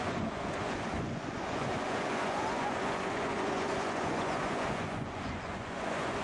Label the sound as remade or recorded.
remade